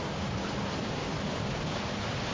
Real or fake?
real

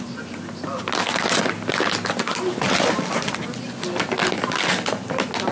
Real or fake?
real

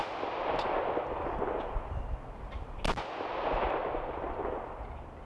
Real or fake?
real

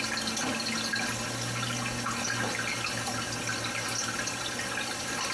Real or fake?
real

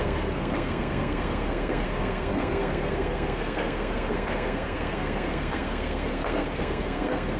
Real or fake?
fake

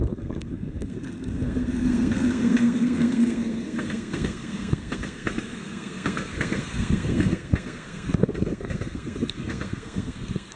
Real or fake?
fake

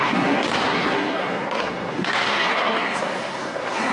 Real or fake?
fake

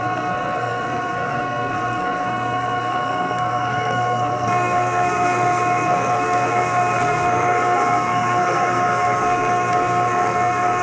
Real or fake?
fake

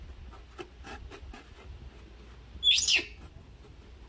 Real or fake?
real